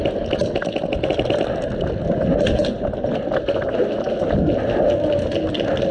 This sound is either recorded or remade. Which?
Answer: recorded